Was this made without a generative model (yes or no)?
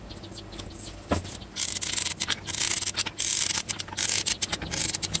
yes